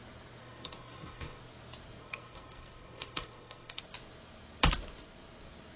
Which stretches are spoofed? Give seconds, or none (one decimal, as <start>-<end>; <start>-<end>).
0.4-1.4; 2.0-3.8